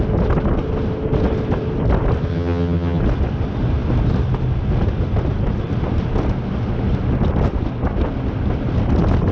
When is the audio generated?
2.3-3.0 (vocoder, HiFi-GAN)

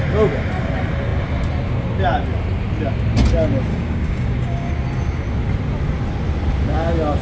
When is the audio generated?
3.7-4.7 (codec, DAC)

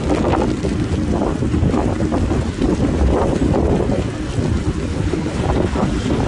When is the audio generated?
4.9-5.4 (codec, HILCodec)

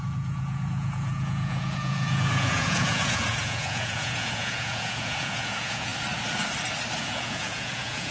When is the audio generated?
0.0-5.9 (vocoder, Vocos); 7.0-8.1

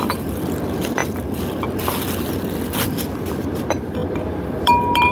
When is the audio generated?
none

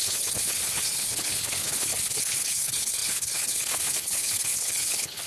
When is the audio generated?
0.0-5.3 (codec, HILCodec)

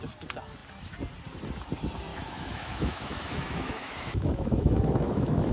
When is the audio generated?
2.1-5.5 (autoencoder, DAC-VAE)

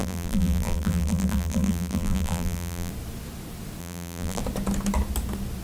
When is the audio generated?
0.0-2.9 (vocoder, BigVGAN v2); 3.8-4.4